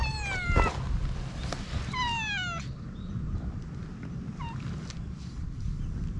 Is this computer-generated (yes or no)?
no